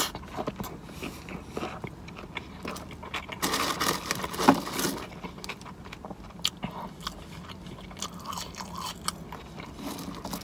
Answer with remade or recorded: recorded